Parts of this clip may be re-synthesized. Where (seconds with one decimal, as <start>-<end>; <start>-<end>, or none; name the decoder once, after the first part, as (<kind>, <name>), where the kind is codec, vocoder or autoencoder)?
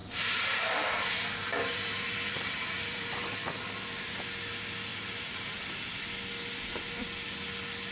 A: 0.0-4.2 (vocoder, BigVGAN v2); 4.9-5.6